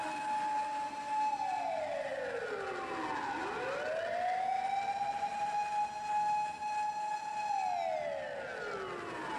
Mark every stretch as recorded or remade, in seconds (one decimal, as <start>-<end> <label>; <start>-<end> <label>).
0.0-9.4 recorded